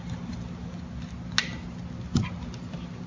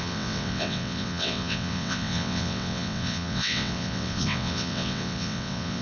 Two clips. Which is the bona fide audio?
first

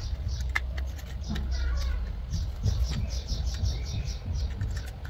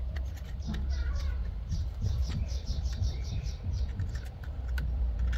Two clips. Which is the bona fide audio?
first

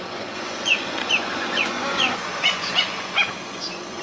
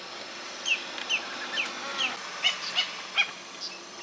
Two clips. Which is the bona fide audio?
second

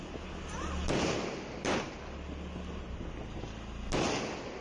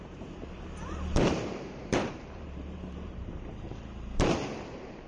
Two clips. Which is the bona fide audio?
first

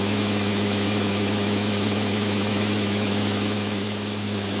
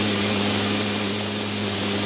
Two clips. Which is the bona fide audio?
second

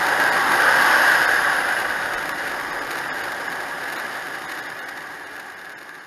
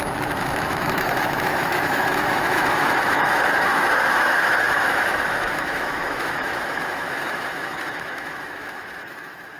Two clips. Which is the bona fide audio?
first